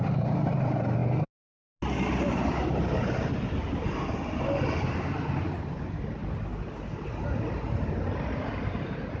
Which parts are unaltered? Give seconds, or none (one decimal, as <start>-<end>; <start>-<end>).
0.0-9.2